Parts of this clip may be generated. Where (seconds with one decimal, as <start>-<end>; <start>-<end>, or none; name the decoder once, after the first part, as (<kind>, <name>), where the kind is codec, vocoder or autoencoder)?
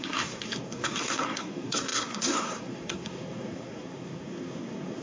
0.0-5.0 (codec, SNAC)